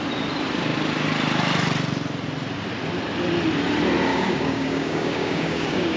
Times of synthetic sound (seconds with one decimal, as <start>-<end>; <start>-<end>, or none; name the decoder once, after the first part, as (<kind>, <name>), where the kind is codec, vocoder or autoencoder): 4.1-6.0 (codec, DAC)